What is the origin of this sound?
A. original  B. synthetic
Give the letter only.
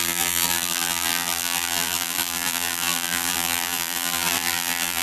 B